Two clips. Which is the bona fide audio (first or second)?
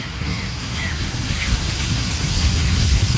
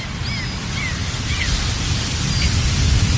second